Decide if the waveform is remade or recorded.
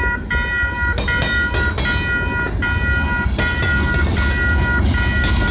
recorded